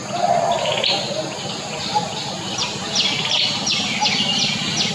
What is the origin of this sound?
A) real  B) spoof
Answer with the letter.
A